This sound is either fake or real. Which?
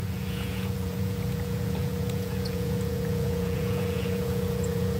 fake